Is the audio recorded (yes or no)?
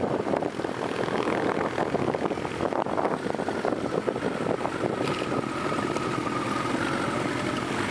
yes